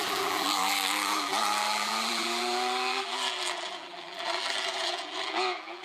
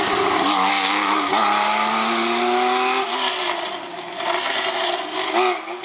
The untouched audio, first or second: second